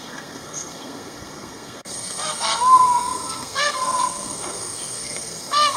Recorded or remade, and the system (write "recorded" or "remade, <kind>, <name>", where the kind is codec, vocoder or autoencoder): remade, codec, SNAC